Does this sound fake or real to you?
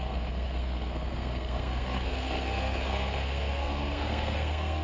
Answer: fake